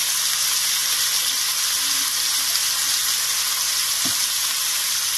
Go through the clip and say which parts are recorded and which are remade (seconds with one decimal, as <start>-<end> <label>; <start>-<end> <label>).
0.0-5.2 recorded